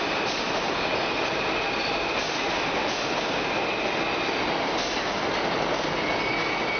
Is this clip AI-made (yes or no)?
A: no